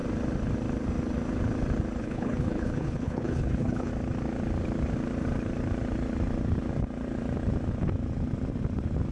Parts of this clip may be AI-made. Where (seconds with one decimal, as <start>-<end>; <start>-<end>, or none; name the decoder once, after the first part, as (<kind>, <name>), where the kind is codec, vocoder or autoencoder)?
2.0-3.9 (codec, HILCodec)